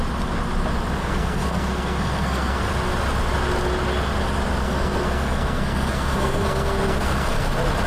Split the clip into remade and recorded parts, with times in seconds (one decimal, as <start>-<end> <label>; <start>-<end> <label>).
0.0-1.0 recorded; 1.0-2.7 remade; 2.7-4.6 recorded; 4.6-7.5 remade; 7.5-7.9 recorded